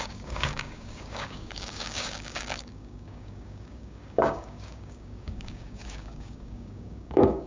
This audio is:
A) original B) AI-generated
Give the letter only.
B